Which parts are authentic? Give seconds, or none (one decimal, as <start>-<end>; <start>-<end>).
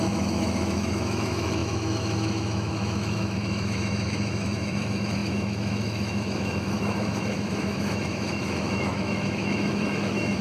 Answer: none